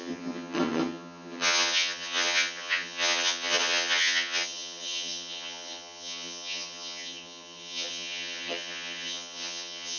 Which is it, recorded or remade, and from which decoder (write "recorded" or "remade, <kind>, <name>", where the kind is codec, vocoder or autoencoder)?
remade, vocoder, HiFi-GAN